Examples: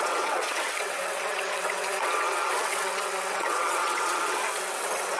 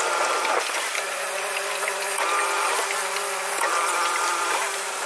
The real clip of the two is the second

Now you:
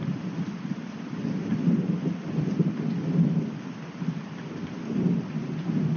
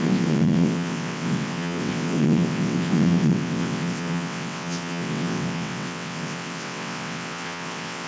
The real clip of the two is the first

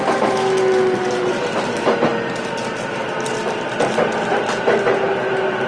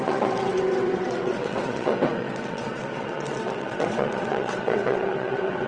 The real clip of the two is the first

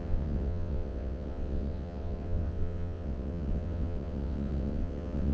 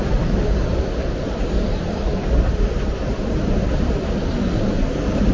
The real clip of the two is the second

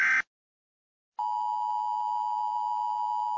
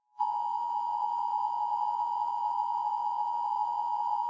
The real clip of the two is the first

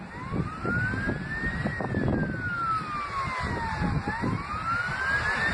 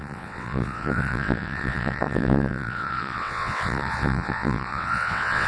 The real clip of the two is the first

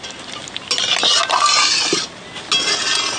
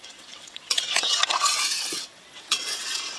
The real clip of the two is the first